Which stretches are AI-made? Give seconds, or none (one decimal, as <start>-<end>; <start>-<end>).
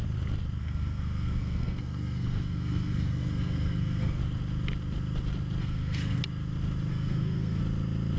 0.6-4.2; 5.6-6.2; 6.9-7.6